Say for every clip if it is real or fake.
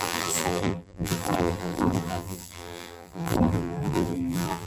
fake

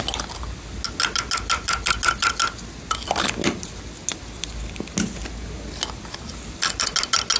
real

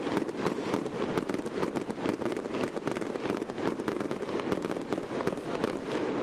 real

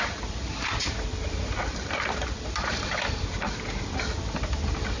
real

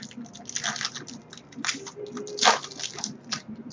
real